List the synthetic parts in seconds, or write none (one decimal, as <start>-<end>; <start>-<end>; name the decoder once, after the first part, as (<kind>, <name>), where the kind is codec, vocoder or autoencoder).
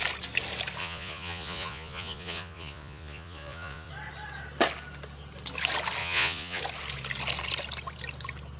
0.8-3.9 (vocoder, Vocos); 6.0-6.6